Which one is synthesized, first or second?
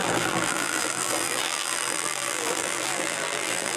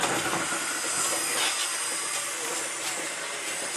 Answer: first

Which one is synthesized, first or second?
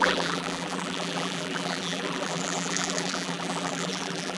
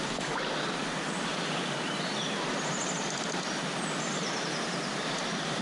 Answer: first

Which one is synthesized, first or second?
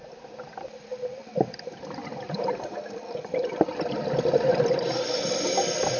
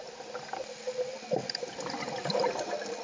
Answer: first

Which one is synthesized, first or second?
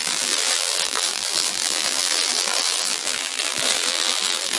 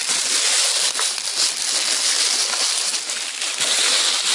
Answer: first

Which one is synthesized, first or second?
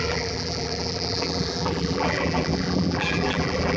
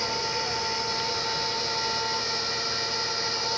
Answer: first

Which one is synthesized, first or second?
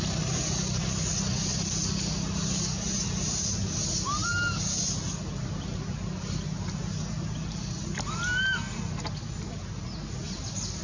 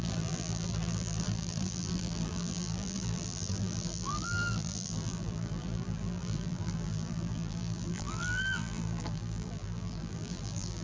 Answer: second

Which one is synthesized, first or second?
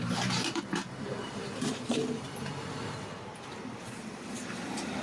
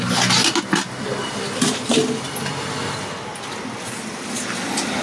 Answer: first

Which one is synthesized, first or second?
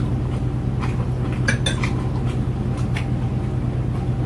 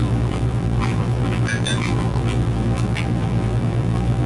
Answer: second